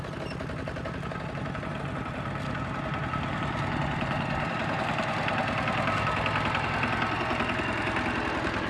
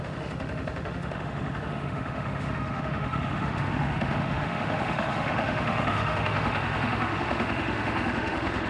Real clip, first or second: first